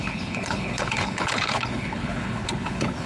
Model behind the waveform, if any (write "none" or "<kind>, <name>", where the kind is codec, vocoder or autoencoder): codec, HILCodec